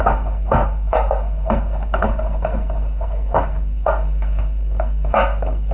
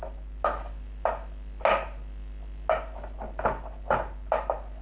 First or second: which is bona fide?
second